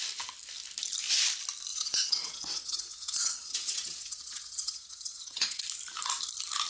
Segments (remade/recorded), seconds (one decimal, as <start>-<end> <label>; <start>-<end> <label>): 0.0-1.7 recorded; 1.7-5.6 remade; 5.6-6.7 recorded